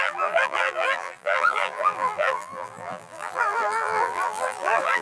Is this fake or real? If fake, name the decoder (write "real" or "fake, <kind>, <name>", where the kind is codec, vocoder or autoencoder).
fake, vocoder, BigVGAN v2